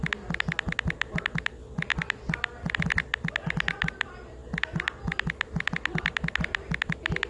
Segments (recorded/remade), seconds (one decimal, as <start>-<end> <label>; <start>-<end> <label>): 0.0-7.3 recorded